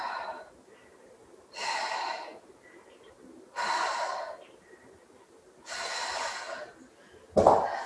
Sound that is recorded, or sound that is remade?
recorded